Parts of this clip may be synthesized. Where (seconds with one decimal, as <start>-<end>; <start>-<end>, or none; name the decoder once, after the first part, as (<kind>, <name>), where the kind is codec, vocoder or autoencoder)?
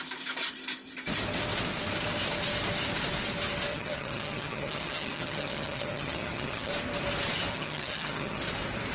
3.7-6.7 (vocoder, HiFi-GAN); 7.5-8.4